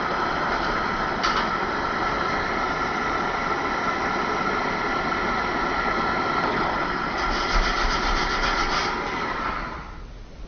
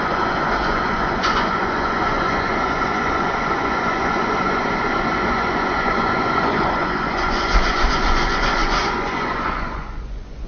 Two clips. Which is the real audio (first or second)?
first